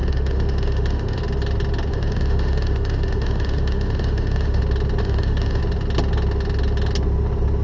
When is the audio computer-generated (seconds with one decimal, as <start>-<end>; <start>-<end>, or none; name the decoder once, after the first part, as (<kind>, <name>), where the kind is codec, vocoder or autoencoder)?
0.0-1.2 (autoencoder, DAC-VAE); 1.9-4.6; 5.0-5.6